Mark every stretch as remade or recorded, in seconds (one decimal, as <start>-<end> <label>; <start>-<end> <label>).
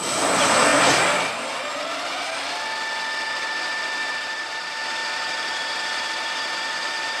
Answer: 0.0-0.7 remade; 0.7-3.3 recorded; 3.3-7.2 remade